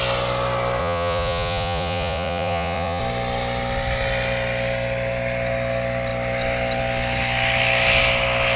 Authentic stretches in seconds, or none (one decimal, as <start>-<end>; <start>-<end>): 0.0-0.8; 3.0-8.6